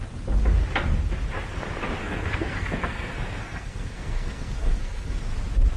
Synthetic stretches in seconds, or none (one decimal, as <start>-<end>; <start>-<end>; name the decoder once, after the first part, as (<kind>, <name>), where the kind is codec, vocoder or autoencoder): 2.0-5.2 (codec, SNAC)